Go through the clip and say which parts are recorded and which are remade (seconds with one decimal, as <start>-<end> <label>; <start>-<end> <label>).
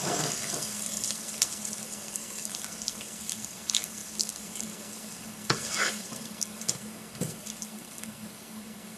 0.0-9.0 remade